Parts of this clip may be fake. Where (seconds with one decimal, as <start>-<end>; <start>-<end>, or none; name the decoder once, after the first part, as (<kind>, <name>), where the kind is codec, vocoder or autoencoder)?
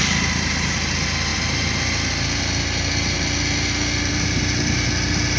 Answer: none